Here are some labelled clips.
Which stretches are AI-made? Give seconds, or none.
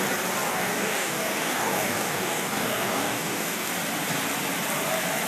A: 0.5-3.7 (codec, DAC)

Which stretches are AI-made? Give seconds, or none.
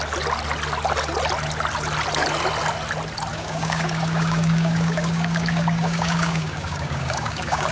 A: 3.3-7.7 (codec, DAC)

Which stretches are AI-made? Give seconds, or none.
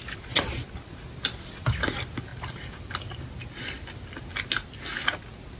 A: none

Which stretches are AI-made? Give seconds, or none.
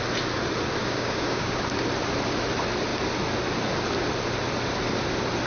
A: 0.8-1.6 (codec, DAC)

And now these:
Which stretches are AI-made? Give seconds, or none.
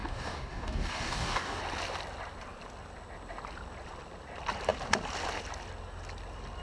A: 0.0-1.6 (codec, DAC)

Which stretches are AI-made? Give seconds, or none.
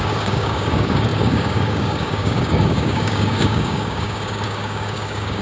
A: 0.0-5.4 (codec, DAC)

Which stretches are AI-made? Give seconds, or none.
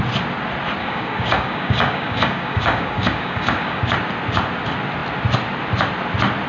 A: 0.8-3.8 (codec, DAC)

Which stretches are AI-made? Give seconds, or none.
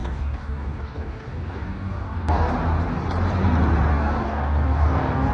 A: 0.0-2.5 (codec, DAC); 3.9-5.3